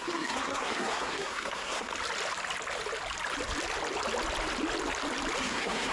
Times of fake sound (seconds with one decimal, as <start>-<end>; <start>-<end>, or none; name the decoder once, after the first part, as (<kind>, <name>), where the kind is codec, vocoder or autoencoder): 0.0-1.9 (codec, SNAC); 5.4-5.9